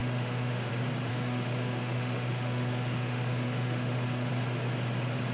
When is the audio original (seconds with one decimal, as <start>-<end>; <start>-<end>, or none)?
0.7-1.1; 4.3-5.3